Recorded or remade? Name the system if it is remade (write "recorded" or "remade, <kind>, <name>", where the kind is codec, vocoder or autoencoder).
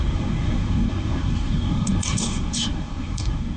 remade, codec, SNAC